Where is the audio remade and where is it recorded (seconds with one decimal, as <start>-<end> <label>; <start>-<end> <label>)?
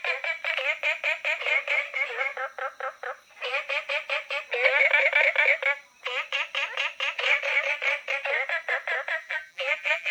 0.0-9.2 recorded; 9.2-10.1 remade